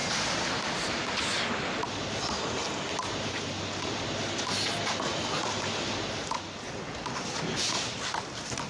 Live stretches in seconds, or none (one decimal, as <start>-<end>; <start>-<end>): 0.0-8.7